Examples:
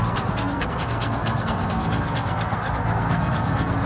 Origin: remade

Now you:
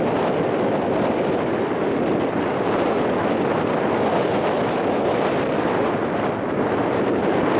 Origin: recorded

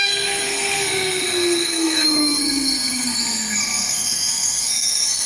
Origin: remade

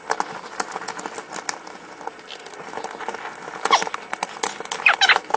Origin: recorded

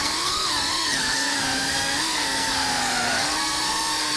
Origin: remade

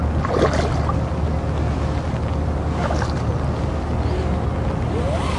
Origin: recorded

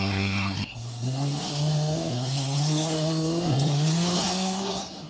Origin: remade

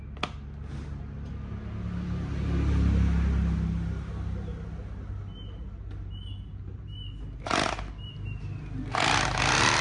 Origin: recorded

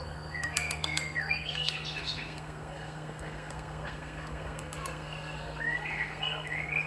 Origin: remade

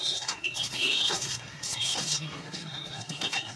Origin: remade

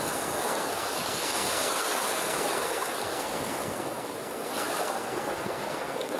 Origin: remade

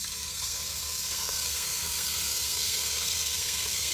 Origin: remade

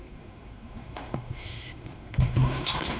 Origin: remade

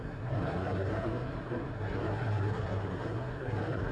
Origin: remade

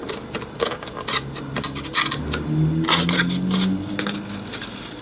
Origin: recorded